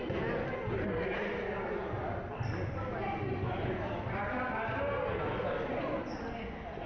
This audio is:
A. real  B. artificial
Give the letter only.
A